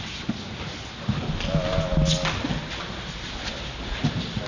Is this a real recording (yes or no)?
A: yes